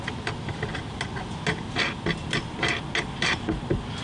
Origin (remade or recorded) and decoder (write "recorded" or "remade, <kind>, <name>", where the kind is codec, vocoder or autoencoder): recorded